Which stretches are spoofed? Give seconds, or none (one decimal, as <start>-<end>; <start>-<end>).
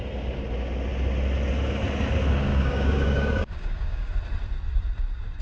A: 2.5-4.1